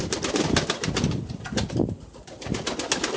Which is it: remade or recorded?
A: recorded